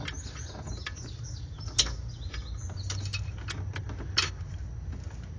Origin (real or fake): real